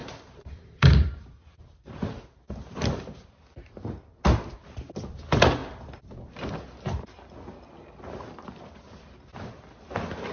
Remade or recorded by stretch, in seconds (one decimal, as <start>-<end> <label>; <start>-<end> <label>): 0.0-3.3 remade; 3.3-10.3 recorded